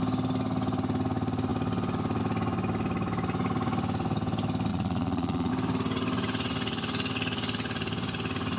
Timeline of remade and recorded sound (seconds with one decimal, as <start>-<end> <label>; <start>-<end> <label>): 0.0-4.7 recorded; 4.7-5.5 remade; 5.5-8.6 recorded

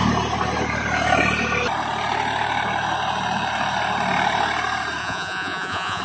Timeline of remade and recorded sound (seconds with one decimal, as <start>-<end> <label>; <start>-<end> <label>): 0.0-5.0 recorded; 5.0-6.0 remade

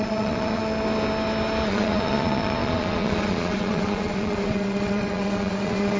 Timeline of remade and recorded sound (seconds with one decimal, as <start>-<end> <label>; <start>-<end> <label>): 0.0-0.6 remade; 0.6-1.7 recorded; 1.7-6.0 remade

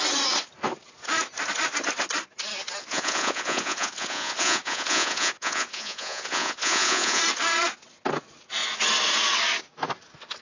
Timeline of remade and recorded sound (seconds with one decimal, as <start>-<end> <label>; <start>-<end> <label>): 0.0-2.8 recorded; 2.8-7.2 remade; 7.2-10.4 recorded

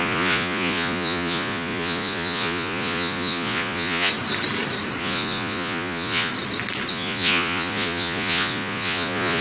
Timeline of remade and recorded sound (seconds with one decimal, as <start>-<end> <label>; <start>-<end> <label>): 0.0-4.1 remade; 4.1-5.0 recorded; 5.0-6.3 remade; 6.3-6.9 recorded; 6.9-9.4 remade

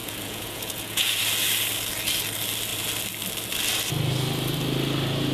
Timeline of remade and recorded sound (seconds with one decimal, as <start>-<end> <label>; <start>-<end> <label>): 0.0-1.2 remade; 1.2-5.3 recorded

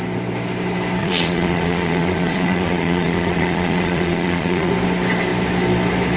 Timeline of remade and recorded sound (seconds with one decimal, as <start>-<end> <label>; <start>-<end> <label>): 0.0-1.0 recorded; 1.0-4.7 remade; 4.7-6.2 recorded

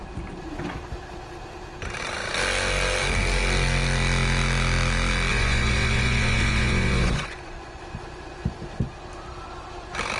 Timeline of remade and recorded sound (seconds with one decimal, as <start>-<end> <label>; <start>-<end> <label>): 0.0-5.3 recorded; 5.3-7.8 remade; 7.8-10.2 recorded